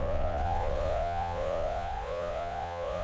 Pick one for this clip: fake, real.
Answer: fake